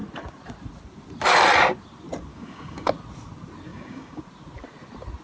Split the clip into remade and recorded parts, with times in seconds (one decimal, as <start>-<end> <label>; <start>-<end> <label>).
0.0-2.3 recorded; 2.3-2.9 remade; 2.9-3.7 recorded; 3.7-4.2 remade; 4.2-5.2 recorded